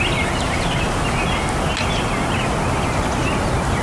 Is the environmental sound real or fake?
real